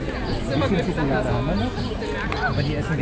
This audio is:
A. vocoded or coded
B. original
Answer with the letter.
B